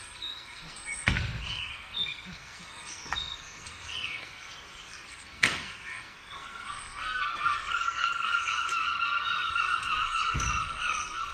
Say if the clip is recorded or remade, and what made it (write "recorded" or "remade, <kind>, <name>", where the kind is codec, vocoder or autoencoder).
remade, codec, SNAC